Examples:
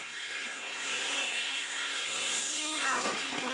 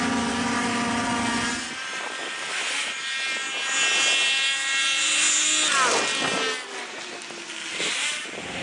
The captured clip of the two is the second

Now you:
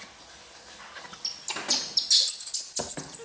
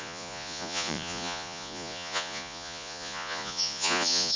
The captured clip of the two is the first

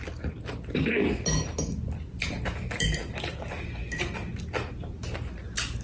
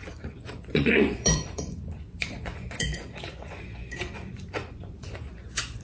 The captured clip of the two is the first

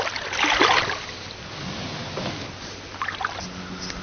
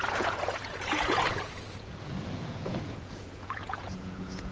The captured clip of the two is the first